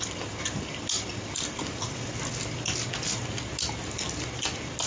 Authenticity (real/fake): real